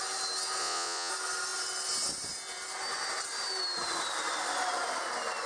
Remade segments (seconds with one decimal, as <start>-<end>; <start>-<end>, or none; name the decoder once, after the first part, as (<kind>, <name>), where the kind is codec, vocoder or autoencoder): 0.6-1.1 (vocoder, Vocos)